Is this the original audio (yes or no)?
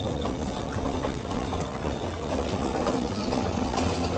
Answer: no